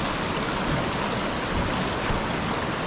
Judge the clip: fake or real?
real